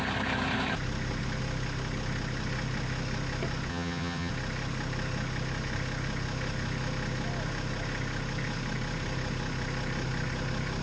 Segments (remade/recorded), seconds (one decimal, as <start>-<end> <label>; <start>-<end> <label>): 0.0-3.7 recorded; 3.7-4.3 remade; 4.3-10.8 recorded